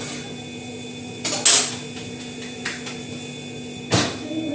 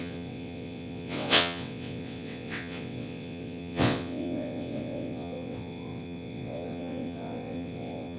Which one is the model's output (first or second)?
second